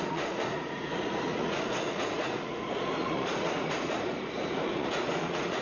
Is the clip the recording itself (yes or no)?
no